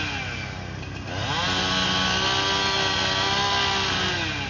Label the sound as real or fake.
real